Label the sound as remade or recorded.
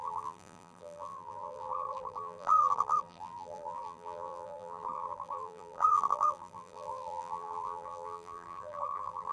remade